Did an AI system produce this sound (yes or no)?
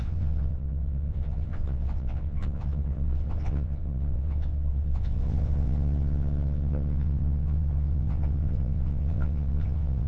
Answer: yes